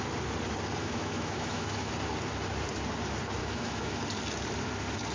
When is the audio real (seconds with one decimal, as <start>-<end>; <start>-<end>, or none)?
0.0-0.8; 1.9-3.4; 4.0-5.1